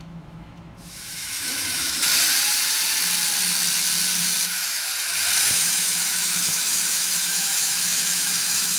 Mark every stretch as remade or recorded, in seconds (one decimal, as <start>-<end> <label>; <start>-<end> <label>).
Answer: 0.0-2.1 remade; 2.1-4.4 recorded; 4.4-4.9 remade; 4.9-5.4 recorded; 5.4-8.8 remade